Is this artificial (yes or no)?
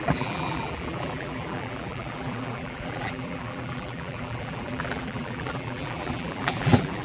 yes